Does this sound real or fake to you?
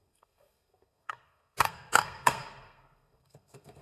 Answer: fake